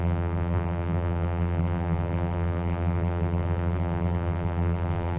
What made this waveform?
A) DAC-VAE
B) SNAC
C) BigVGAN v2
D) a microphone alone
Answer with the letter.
C